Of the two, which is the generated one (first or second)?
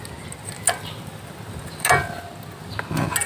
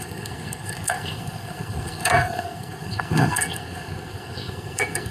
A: second